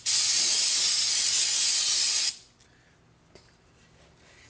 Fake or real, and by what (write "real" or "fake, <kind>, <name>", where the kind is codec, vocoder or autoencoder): real